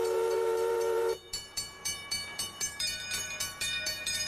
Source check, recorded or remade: remade